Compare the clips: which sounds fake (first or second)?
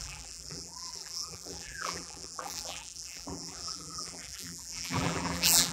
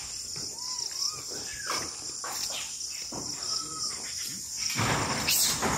first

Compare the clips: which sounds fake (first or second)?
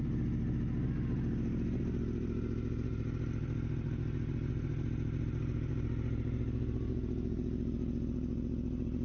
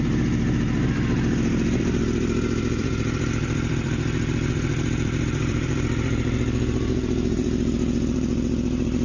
second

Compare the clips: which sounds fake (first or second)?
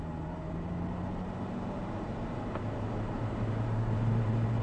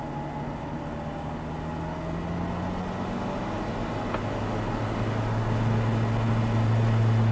first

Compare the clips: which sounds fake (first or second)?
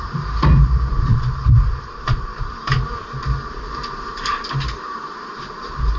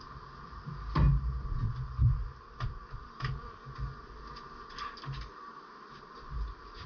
first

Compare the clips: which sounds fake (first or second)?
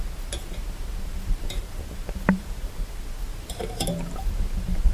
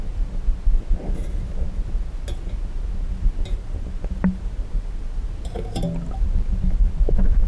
first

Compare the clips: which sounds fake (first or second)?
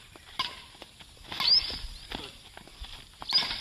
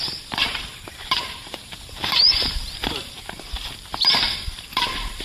second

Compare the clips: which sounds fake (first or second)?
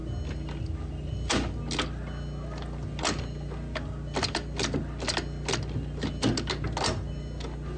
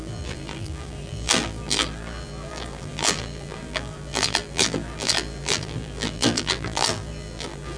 second